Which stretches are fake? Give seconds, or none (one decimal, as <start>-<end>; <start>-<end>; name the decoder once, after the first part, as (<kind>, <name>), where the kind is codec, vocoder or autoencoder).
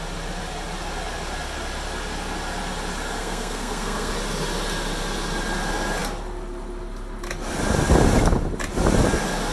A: 3.2-4.1 (codec, SNAC)